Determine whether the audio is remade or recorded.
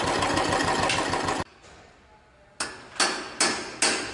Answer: recorded